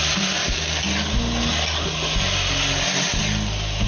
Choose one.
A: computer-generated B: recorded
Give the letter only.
B